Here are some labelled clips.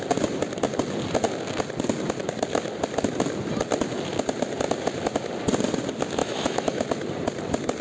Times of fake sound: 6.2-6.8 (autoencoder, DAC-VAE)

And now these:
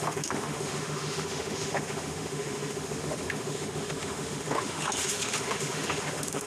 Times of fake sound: 0.0-6.5 (autoencoder, DAC-VAE)

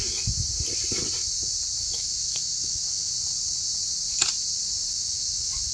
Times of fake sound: 1.8-3.1 (autoencoder, DAC-VAE); 4.9-5.7

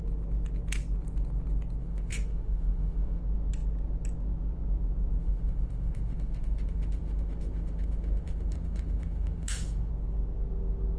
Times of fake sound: 1.8-3.2 (autoencoder, DAC-VAE); 5.2-9.9

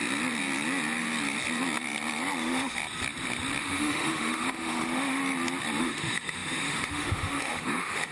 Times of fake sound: 2.4-2.8 (autoencoder, DAC-VAE); 3.6-5.2; 5.8-8.1

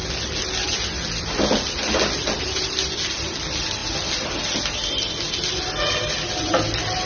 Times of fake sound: none